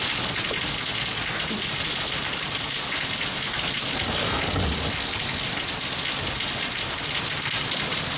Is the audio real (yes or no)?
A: yes